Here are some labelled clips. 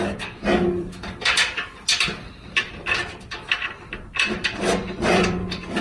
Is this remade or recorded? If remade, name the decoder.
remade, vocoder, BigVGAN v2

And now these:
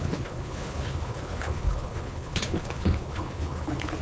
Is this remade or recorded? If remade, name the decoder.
remade, codec, HILCodec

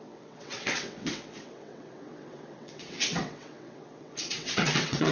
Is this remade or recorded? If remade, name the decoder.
remade, vocoder, WaveNeXt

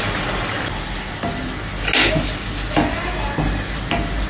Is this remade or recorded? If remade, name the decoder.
recorded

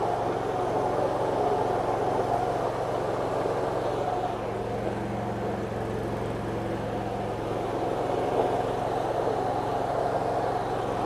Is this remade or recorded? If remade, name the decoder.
recorded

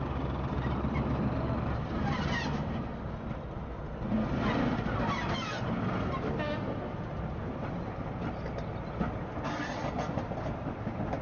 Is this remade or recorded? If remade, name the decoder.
recorded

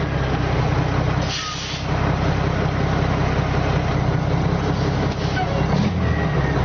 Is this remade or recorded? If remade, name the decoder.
recorded